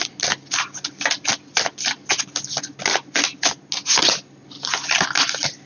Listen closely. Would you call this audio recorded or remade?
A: recorded